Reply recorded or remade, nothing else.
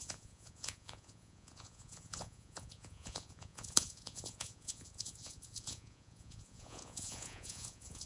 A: remade